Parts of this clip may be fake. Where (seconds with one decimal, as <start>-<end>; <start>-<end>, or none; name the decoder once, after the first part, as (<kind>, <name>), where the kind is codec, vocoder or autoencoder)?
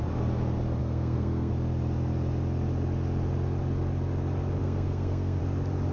0.8-1.5 (codec, SNAC); 4.6-5.4